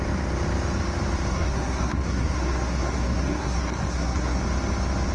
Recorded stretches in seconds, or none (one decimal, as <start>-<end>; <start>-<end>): 0.0-1.3; 4.4-5.1